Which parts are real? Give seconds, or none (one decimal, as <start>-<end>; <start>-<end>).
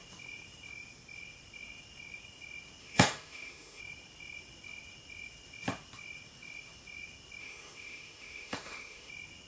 0.0-2.8; 3.8-7.4; 9.1-9.5